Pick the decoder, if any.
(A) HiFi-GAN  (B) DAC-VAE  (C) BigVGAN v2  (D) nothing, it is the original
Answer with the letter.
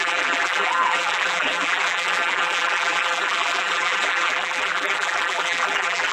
C